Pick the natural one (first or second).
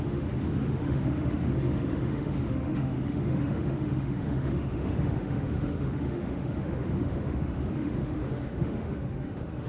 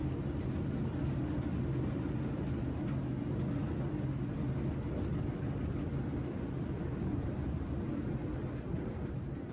second